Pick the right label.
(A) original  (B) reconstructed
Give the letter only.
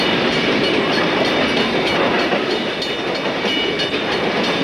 A